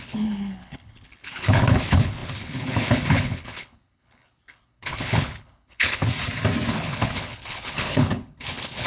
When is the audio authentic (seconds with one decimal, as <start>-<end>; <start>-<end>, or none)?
6.1-6.7